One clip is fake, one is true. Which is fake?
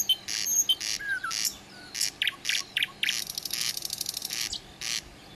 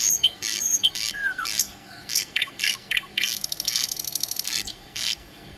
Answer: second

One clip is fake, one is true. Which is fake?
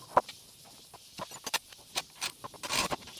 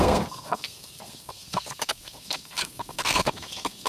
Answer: second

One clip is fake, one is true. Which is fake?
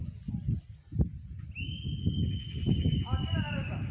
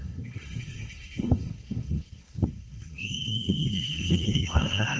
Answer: second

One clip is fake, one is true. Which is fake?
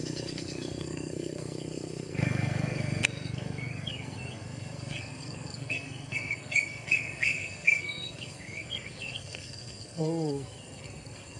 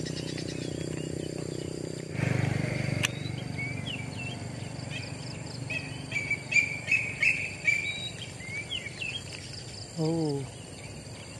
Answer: first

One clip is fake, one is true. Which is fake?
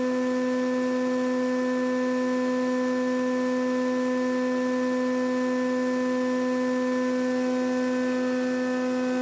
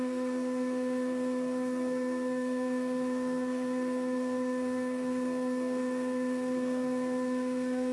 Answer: second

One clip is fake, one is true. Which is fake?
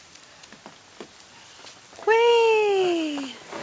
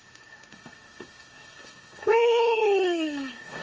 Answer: second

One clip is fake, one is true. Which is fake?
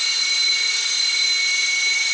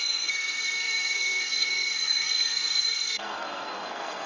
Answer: second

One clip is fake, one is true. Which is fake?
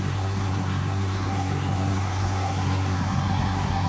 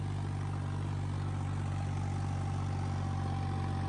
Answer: first